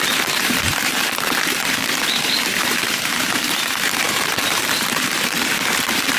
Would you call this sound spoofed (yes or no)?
yes